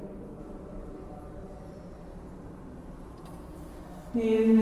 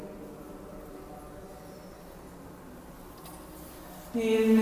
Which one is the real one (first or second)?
second